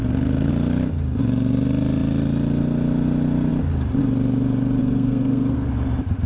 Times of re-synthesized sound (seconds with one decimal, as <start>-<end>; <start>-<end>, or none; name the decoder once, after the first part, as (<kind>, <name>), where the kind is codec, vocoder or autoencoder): 0.0-0.5 (codec, SNAC); 4.8-5.7